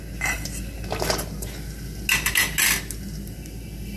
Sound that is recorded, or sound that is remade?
recorded